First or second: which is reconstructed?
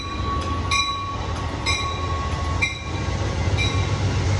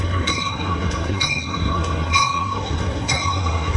second